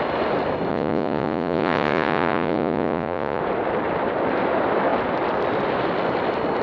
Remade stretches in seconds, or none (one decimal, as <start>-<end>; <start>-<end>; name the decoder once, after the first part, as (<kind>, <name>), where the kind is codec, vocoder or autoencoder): 0.7-3.4 (vocoder, Vocos)